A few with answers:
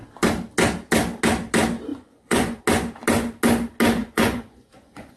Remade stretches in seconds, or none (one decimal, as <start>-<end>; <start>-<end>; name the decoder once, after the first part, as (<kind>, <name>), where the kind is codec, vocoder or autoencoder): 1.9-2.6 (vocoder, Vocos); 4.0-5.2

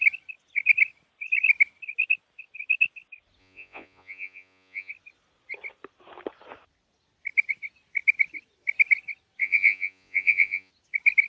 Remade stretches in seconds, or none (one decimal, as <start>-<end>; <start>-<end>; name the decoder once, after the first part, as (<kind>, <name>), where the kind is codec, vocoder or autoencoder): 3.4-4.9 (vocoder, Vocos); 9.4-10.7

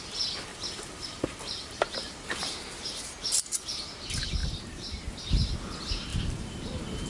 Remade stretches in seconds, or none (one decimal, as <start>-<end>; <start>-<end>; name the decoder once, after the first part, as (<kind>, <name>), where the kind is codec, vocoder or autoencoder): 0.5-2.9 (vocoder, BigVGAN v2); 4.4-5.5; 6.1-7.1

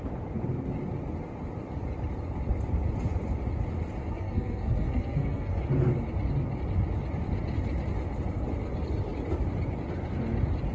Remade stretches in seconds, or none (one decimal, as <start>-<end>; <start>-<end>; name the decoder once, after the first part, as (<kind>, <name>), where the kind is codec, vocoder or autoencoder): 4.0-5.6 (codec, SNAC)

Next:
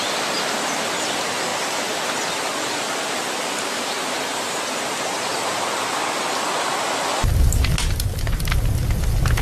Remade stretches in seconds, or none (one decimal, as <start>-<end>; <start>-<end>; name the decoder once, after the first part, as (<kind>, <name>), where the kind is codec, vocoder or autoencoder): none

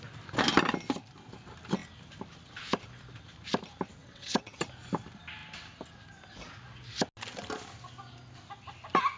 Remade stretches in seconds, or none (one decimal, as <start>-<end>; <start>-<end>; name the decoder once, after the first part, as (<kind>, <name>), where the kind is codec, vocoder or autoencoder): 4.0-4.6 (vocoder, WaveNeXt)